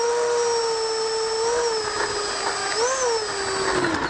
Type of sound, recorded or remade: recorded